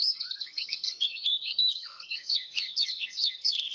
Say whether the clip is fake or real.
fake